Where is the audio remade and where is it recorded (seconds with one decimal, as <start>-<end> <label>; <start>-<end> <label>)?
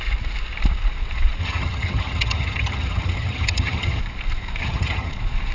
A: 0.0-1.4 recorded; 1.4-4.0 remade; 4.0-4.6 recorded; 4.6-5.1 remade; 5.1-5.5 recorded